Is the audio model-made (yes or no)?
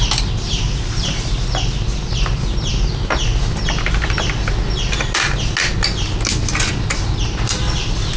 no